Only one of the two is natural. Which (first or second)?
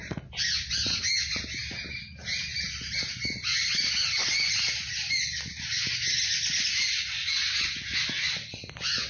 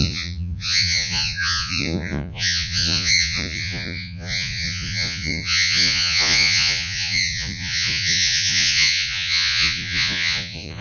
first